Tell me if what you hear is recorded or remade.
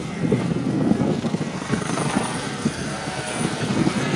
remade